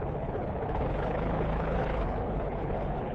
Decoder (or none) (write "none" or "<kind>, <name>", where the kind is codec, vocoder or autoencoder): codec, HILCodec